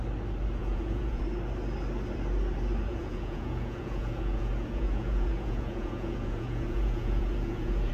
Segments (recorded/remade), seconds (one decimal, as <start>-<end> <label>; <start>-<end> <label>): 0.0-0.6 recorded; 0.6-1.2 remade; 1.2-2.9 recorded; 2.9-7.9 remade